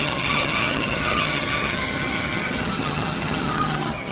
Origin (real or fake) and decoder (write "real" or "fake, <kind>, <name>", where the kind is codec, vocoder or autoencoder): fake, vocoder, HiFi-GAN